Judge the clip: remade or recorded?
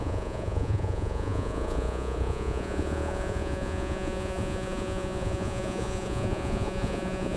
remade